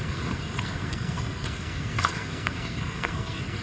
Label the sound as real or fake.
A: fake